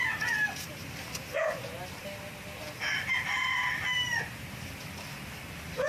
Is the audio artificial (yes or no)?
no